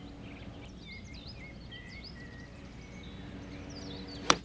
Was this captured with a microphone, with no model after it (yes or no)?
yes